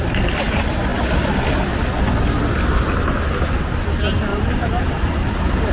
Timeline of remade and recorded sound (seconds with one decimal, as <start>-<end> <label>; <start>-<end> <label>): 0.0-4.3 recorded; 4.3-5.1 remade; 5.1-5.7 recorded